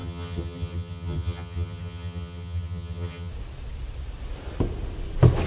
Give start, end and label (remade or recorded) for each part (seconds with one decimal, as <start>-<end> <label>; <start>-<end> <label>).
0.0-3.3 remade; 3.3-5.5 recorded